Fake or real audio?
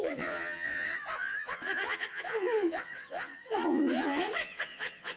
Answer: fake